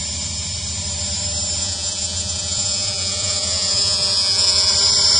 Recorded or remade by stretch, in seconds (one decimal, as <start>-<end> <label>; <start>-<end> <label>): 0.0-1.6 recorded; 1.6-4.7 remade; 4.7-5.2 recorded